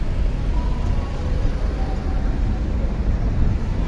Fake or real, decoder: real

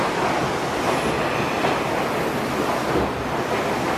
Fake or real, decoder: real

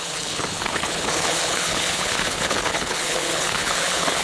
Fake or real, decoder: fake, codec, HILCodec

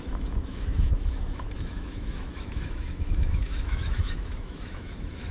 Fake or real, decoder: fake, autoencoder, DAC-VAE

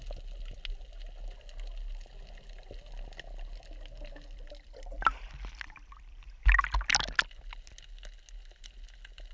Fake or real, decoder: real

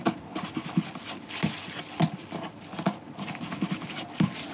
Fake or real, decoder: real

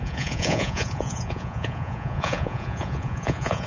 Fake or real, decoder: fake, vocoder, Vocos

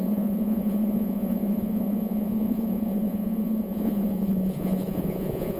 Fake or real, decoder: fake, vocoder, Vocos